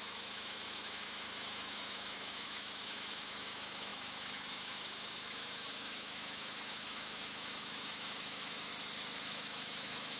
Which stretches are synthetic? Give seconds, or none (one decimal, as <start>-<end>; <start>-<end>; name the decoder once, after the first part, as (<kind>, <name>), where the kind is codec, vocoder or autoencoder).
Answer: 0.0-8.7 (autoencoder, DAC-VAE); 9.2-10.2